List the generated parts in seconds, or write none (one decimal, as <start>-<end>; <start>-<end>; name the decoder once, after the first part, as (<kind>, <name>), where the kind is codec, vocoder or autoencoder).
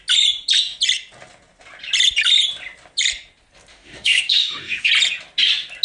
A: 3.7-4.9 (autoencoder, DAC-VAE)